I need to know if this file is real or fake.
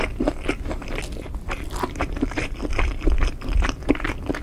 fake